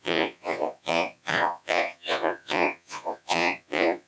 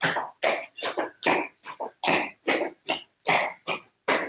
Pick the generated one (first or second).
first